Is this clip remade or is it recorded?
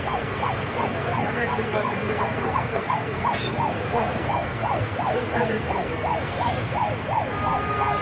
remade